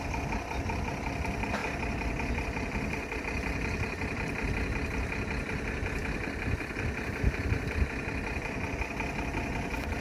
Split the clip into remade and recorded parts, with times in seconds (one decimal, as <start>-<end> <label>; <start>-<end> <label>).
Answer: 0.0-10.0 recorded